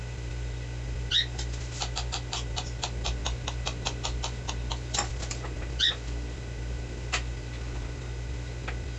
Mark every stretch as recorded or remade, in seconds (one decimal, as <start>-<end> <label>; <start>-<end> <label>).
0.0-9.0 recorded